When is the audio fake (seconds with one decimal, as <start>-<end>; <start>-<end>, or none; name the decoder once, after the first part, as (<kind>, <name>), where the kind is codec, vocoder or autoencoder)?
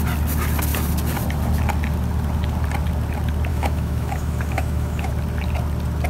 3.5-5.1 (autoencoder, DAC-VAE)